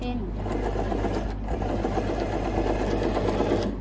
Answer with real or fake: real